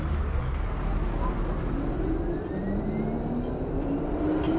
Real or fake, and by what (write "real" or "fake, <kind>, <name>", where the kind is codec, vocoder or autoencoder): real